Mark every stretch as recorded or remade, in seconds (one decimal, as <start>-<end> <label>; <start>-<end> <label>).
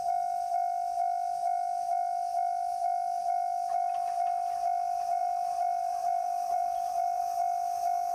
0.0-5.2 recorded; 5.2-7.2 remade; 7.2-8.1 recorded